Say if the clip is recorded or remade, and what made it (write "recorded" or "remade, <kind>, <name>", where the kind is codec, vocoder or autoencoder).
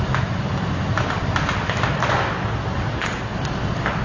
recorded